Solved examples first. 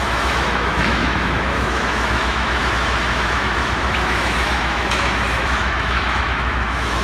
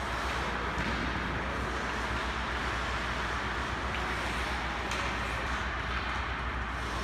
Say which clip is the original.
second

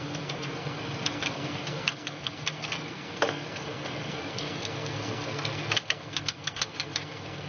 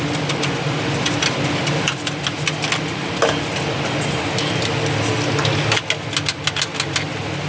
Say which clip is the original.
second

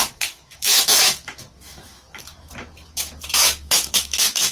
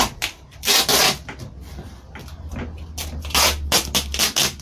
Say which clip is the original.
second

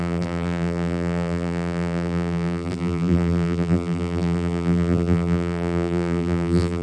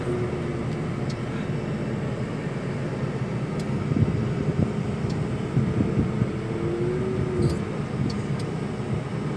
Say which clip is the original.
second